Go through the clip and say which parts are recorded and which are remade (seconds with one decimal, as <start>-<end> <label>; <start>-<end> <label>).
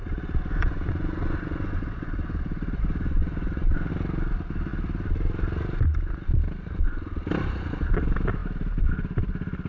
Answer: 0.0-3.9 remade; 3.9-9.7 recorded